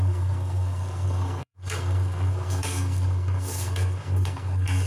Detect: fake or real fake